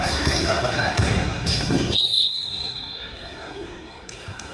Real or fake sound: fake